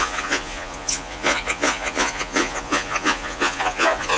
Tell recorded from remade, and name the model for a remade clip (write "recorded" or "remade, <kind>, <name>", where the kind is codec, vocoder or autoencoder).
remade, vocoder, Vocos